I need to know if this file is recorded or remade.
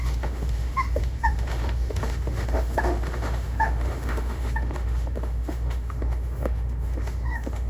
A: remade